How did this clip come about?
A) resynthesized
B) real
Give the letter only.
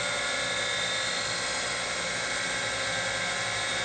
B